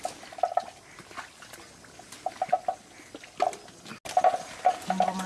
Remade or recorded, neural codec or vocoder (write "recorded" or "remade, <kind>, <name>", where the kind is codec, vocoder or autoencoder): recorded